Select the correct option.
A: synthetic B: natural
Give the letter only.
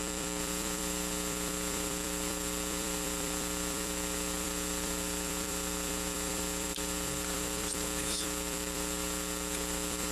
A